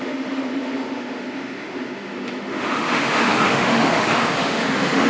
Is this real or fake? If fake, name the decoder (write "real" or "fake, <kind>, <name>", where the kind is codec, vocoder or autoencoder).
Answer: fake, autoencoder, DAC-VAE